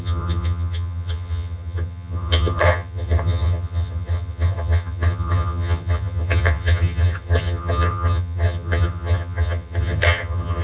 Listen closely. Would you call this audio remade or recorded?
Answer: remade